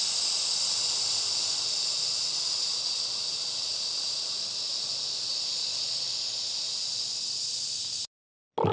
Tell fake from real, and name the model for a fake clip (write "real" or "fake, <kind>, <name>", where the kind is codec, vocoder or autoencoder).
real